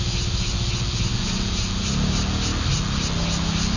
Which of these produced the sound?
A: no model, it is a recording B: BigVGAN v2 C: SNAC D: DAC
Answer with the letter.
A